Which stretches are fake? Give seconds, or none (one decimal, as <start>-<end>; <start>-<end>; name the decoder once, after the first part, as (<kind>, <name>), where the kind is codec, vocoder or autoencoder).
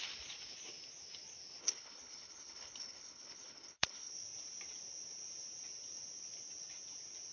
1.6-4.1 (codec, HILCodec)